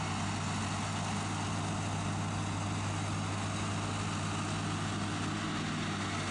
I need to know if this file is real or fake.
real